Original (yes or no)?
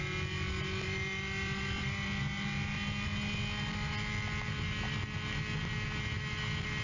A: yes